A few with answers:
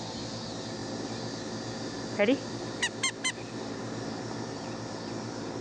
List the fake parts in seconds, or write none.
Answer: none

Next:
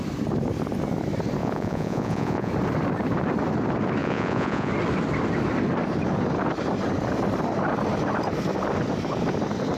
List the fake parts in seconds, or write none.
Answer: 1.4-2.5 (vocoder, Vocos); 4.0-4.7